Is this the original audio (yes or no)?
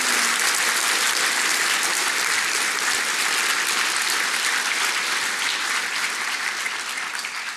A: yes